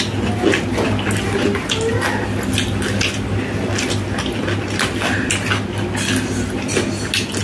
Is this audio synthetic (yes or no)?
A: no